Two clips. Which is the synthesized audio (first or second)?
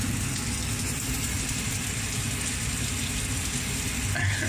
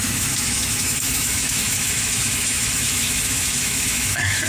second